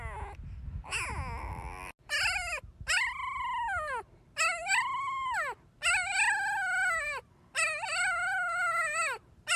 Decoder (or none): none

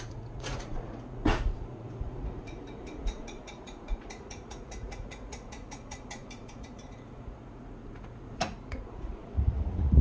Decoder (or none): vocoder, Vocos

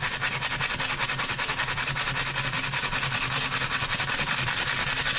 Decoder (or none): none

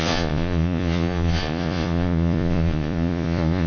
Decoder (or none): vocoder, Vocos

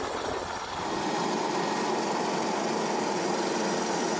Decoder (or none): none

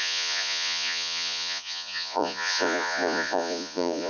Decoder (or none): vocoder, Vocos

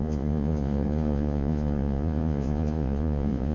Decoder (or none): vocoder, Vocos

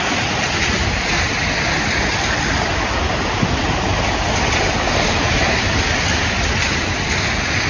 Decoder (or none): none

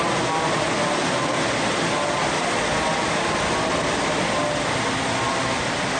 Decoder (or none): none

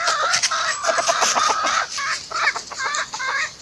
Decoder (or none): none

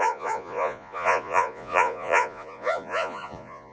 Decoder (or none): vocoder, Vocos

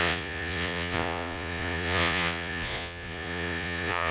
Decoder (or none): vocoder, Vocos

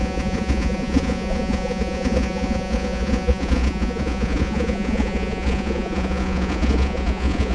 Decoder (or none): vocoder, Vocos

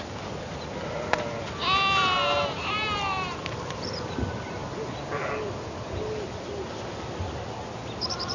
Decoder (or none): none